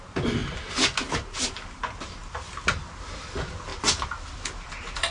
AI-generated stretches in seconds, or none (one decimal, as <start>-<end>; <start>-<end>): none